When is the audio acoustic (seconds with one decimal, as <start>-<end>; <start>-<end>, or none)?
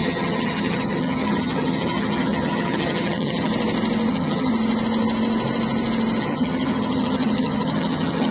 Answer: 3.5-4.1; 4.5-6.2